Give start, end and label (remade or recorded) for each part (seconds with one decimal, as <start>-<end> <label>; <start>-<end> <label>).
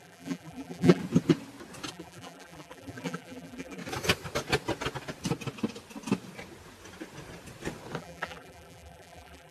0.0-1.0 remade; 1.0-1.9 recorded; 1.9-3.8 remade; 3.8-8.0 recorded; 8.0-9.5 remade